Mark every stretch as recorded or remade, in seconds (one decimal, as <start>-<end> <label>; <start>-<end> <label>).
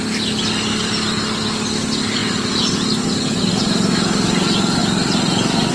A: 0.0-5.7 recorded